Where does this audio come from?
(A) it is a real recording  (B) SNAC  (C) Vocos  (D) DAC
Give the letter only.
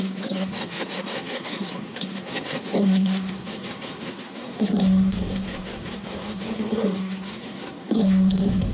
B